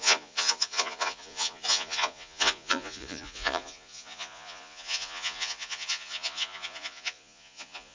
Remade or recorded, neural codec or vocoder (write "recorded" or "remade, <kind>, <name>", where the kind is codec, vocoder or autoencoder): remade, vocoder, Vocos